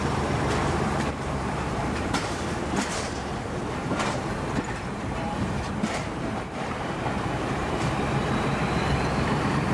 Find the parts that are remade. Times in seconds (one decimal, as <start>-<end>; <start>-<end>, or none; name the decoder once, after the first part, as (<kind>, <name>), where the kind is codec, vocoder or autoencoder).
0.0-9.7 (vocoder, BigVGAN v2)